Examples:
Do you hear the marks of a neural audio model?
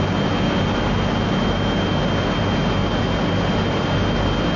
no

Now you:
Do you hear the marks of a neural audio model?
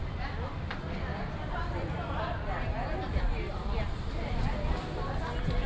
no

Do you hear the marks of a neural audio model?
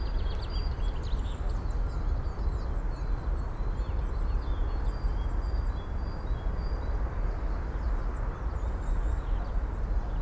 no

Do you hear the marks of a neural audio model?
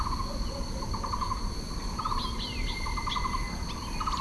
no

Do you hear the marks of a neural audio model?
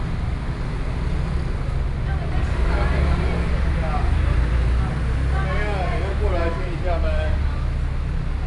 no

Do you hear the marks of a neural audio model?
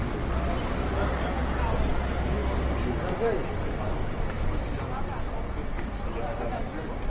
no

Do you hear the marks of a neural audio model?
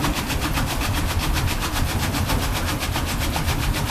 no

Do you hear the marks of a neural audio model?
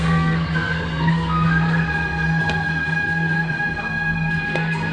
yes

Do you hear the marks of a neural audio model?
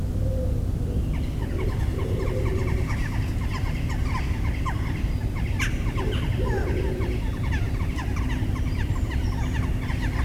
no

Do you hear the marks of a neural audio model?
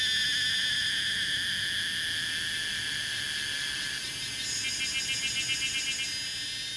no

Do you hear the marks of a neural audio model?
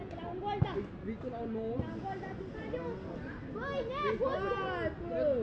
no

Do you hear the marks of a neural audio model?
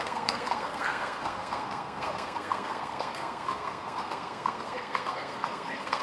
yes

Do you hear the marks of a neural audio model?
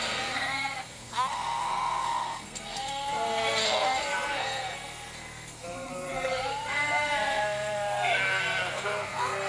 yes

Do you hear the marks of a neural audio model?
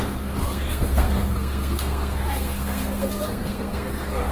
yes